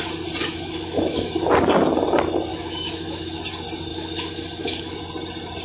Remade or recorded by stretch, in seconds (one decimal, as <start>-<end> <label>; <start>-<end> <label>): 0.0-0.4 recorded; 0.4-1.5 remade; 1.5-2.5 recorded; 2.5-3.4 remade; 3.4-3.9 recorded; 3.9-5.0 remade; 5.0-5.6 recorded